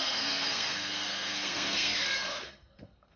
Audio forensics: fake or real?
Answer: fake